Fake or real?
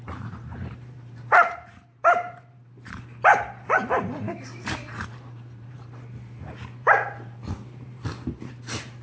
fake